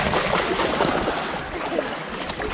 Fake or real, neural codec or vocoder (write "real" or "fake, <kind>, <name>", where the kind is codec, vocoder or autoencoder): real